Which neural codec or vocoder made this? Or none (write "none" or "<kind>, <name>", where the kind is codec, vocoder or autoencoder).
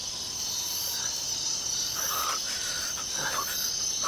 none